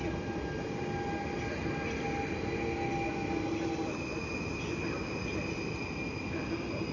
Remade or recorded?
recorded